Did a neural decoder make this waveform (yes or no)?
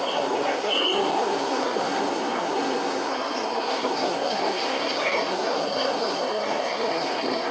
yes